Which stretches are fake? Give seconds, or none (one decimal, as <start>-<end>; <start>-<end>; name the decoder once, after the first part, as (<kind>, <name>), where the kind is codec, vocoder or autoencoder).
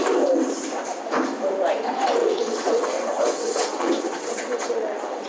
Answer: 2.2-5.3 (vocoder, WaveNeXt)